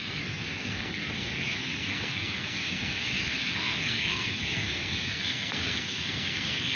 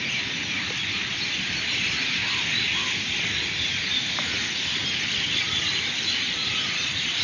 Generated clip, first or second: first